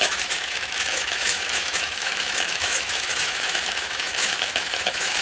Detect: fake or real fake